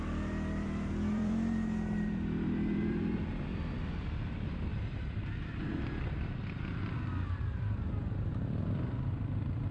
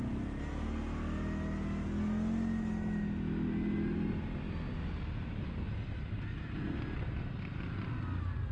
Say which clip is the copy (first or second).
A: first